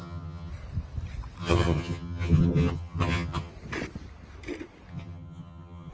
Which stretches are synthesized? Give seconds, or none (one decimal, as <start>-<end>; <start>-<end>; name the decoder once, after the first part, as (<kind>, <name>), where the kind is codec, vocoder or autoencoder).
0.0-0.5 (vocoder, HiFi-GAN); 1.4-3.5; 4.9-5.9